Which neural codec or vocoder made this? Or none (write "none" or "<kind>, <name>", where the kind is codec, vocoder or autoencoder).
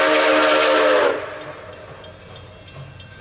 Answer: none